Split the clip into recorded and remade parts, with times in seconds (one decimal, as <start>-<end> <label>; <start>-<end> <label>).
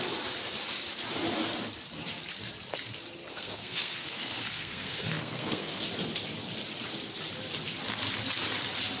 0.0-3.2 recorded; 3.2-5.8 remade; 5.8-9.0 recorded